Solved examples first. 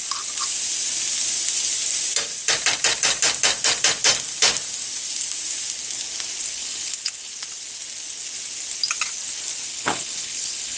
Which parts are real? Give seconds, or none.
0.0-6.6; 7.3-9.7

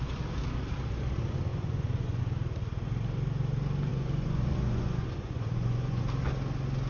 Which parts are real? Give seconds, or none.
0.0-1.5; 2.2-3.9; 6.0-6.9

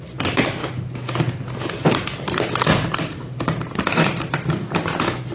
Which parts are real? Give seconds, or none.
0.0-5.3

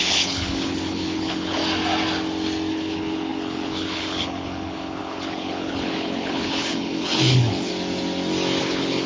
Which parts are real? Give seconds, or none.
1.6-2.7; 7.7-8.6